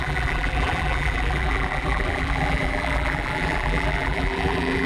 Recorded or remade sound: remade